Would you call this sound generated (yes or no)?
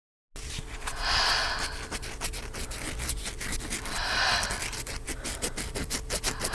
no